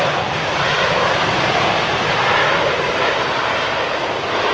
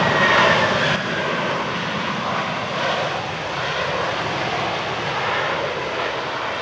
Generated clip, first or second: first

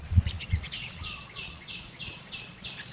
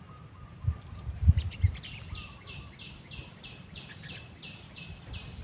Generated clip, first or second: first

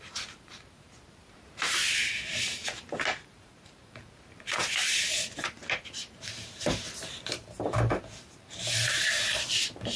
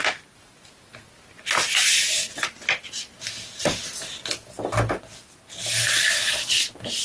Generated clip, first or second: first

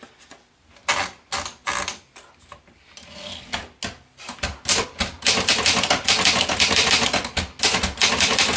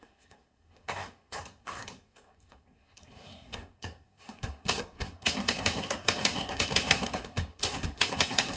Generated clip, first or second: second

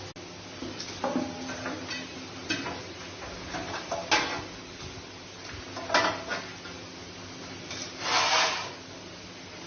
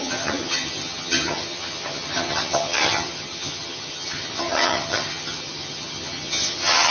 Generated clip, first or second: second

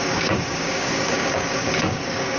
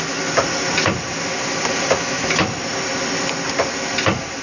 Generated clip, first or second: first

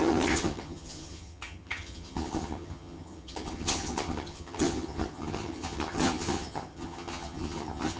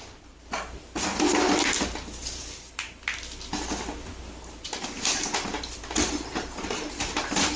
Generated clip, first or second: first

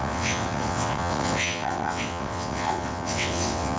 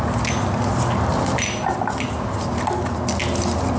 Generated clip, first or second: first